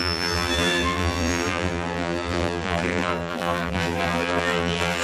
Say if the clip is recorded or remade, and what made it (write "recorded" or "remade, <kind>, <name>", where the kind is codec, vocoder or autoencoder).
remade, vocoder, BigVGAN v2